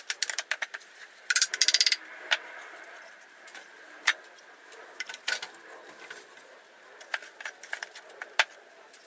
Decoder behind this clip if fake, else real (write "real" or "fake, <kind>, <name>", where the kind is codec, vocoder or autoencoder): real